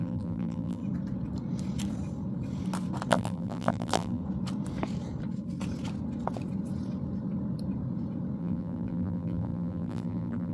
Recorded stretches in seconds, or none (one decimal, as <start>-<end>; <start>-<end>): 0.8-3.1; 4.2-8.4